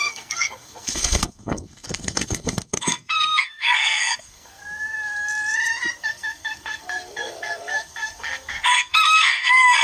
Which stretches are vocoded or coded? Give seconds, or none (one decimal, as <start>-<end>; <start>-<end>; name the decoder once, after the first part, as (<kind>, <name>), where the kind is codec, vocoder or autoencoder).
0.0-4.6 (codec, SNAC); 6.0-9.8